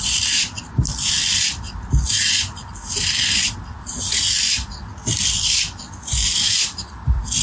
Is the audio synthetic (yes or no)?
no